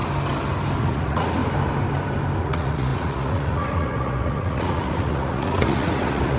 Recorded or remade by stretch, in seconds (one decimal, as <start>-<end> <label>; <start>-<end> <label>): 0.0-0.8 recorded; 0.8-1.4 remade; 1.4-2.4 recorded; 2.4-6.4 remade